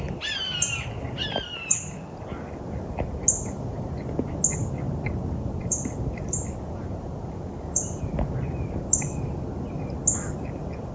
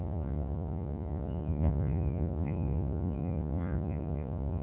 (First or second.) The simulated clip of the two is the second